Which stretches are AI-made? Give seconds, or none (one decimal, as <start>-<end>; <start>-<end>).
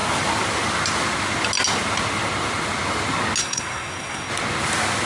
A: 3.4-4.3